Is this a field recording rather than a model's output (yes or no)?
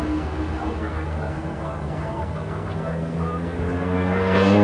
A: no